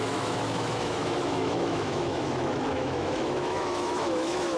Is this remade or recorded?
remade